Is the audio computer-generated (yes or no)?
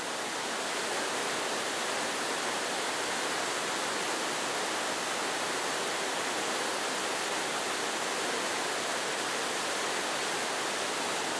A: no